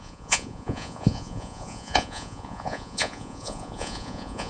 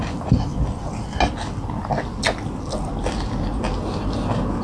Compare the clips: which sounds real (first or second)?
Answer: second